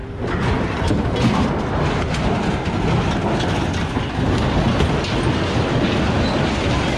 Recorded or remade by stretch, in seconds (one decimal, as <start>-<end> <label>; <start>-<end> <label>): 0.0-1.7 remade; 1.7-7.0 recorded